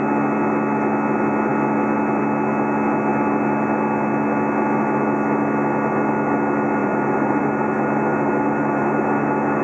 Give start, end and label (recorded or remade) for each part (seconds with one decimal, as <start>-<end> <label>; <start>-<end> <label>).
0.0-6.8 recorded; 6.8-7.4 remade; 7.4-9.6 recorded